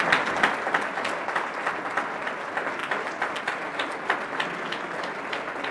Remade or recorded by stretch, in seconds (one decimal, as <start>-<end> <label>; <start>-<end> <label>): 0.0-5.7 recorded